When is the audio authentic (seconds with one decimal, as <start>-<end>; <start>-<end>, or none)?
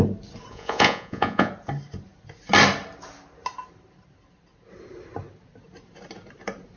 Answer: 0.0-0.5; 1.5-6.8